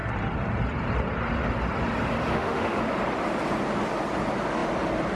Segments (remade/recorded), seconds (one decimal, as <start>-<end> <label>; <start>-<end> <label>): 0.0-2.3 recorded; 2.3-2.8 remade; 2.8-5.2 recorded